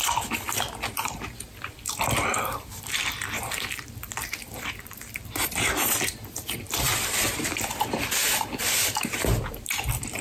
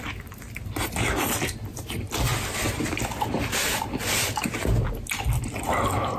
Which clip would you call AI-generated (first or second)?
first